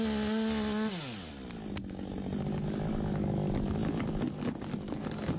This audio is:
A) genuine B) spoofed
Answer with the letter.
A